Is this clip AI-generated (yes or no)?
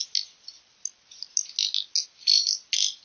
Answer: no